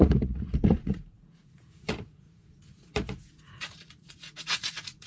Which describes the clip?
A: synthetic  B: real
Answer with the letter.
A